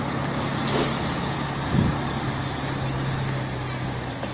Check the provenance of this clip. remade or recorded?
recorded